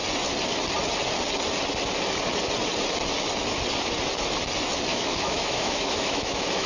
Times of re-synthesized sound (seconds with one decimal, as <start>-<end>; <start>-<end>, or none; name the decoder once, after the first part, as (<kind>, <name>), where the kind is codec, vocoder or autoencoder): 4.9-6.7 (autoencoder, DAC-VAE)